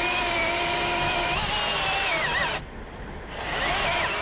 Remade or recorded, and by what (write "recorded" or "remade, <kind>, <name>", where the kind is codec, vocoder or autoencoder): recorded